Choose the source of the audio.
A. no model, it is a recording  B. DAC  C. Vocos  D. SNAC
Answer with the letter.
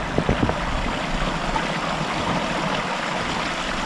A